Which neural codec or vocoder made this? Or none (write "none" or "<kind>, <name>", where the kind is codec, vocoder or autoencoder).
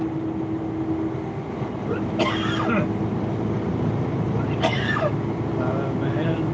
none